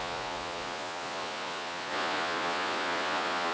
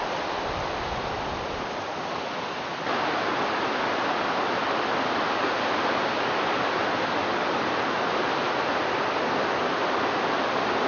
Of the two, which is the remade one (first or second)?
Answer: first